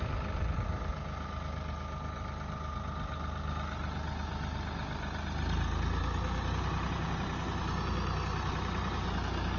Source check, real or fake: real